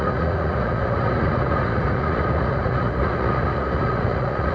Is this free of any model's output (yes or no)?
no